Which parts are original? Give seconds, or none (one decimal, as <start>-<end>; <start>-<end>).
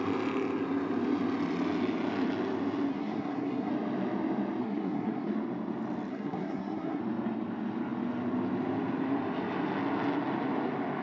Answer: 0.0-2.9; 3.7-4.6; 5.3-6.1; 7.0-11.0